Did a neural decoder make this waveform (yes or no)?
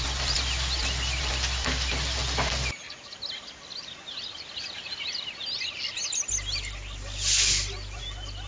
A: no